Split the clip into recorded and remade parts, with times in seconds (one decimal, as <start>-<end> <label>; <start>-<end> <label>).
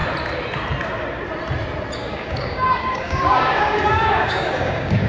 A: 0.0-2.0 recorded; 2.0-5.1 remade